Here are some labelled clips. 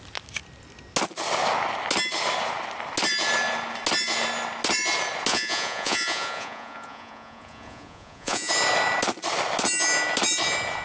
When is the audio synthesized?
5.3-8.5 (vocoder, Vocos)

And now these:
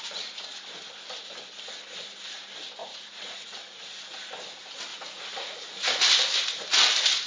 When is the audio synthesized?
2.8-3.6 (vocoder, Vocos); 4.9-6.0

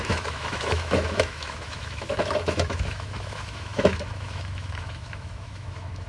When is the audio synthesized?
0.0-6.1 (autoencoder, DAC-VAE)

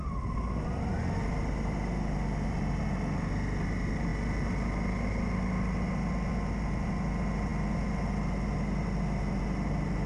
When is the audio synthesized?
none

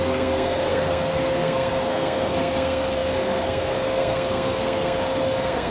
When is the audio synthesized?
0.0-5.7 (codec, SNAC)

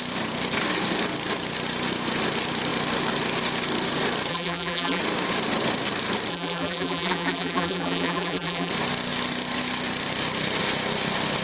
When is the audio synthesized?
4.3-5.0 (vocoder, BigVGAN v2); 6.3-8.7